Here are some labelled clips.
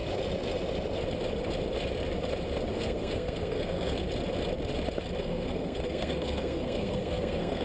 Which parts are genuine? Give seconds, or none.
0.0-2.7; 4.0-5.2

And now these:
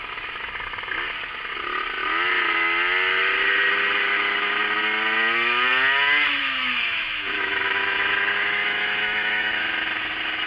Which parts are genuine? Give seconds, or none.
0.0-6.4; 9.7-10.5

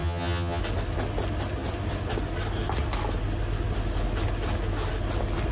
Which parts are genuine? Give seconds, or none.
0.6-5.5